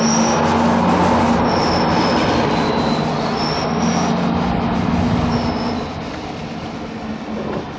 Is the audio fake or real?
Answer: real